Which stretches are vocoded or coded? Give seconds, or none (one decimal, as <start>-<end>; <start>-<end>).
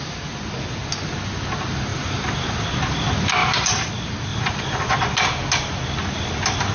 1.9-2.4; 3.4-3.9; 4.3-4.9